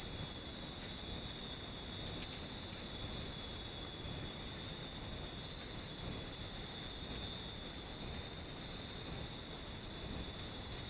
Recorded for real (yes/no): yes